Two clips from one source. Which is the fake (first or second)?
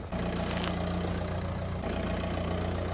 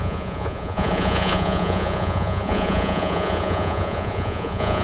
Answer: second